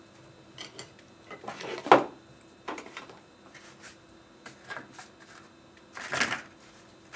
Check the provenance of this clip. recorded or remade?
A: recorded